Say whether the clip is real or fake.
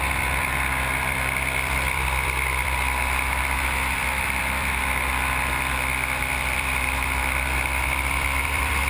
fake